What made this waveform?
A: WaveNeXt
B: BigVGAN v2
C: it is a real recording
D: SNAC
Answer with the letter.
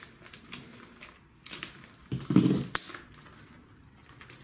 C